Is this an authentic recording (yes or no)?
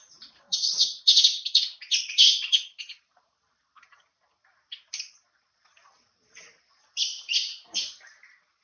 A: no